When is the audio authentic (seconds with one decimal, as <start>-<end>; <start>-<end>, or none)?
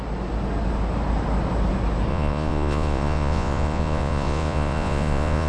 0.0-2.1